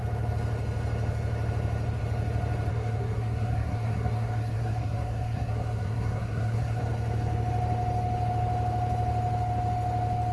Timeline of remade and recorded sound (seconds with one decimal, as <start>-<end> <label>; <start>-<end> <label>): 0.0-2.7 recorded; 2.7-6.8 remade; 6.8-10.3 recorded